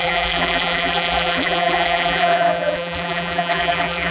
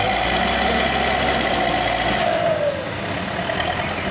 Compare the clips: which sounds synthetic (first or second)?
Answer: first